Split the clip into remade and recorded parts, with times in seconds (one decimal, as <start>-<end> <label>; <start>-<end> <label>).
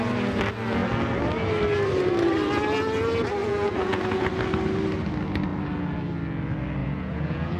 0.0-3.4 recorded; 3.4-4.3 remade; 4.3-6.8 recorded; 6.8-7.6 remade